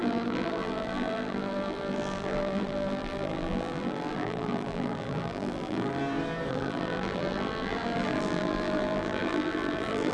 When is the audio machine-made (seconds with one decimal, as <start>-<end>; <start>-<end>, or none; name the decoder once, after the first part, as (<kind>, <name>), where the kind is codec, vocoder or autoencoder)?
0.0-6.0 (vocoder, BigVGAN v2); 6.5-10.1

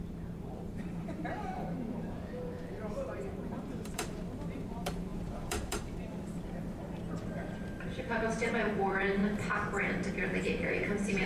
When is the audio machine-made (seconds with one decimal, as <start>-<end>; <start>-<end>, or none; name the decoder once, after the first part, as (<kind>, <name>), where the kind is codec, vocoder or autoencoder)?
0.0-9.2 (vocoder, BigVGAN v2); 10.1-11.3

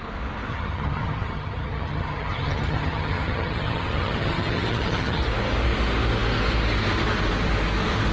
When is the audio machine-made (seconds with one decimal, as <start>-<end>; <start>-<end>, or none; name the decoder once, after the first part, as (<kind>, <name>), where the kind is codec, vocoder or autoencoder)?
0.5-5.2 (vocoder, HiFi-GAN)